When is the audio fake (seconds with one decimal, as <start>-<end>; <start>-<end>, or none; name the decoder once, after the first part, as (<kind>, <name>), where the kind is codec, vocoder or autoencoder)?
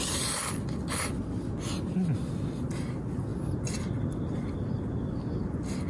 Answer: none